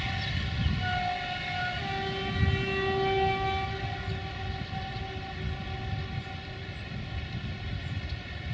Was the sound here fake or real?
real